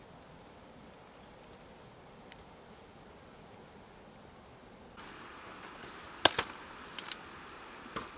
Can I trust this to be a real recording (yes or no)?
yes